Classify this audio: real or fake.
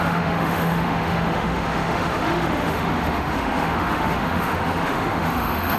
fake